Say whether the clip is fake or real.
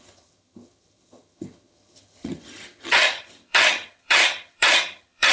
fake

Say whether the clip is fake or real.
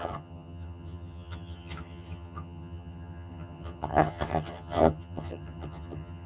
fake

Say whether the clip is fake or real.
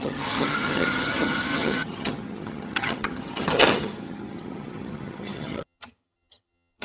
fake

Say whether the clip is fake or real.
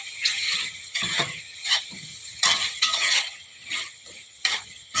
fake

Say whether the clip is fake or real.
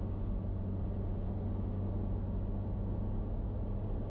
real